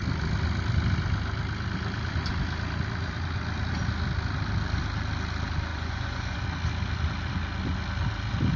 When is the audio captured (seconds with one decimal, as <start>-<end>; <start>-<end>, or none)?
0.0-5.7; 6.4-8.6